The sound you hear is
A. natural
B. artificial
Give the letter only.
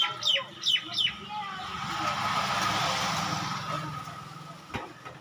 A